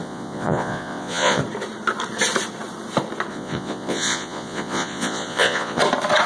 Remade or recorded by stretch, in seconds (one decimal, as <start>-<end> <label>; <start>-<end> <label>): 0.0-1.4 remade; 1.4-3.3 recorded; 3.3-5.8 remade; 5.8-6.3 recorded